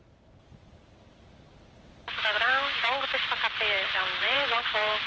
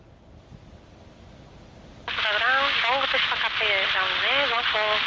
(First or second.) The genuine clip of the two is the second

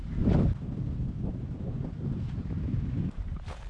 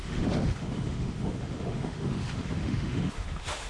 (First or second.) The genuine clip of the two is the first